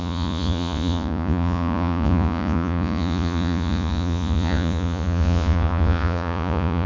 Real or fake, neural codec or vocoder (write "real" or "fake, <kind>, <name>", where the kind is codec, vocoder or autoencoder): fake, vocoder, Vocos